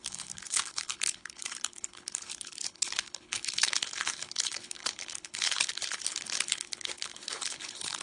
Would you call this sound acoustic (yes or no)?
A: no